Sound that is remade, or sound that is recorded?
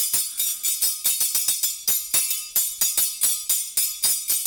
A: recorded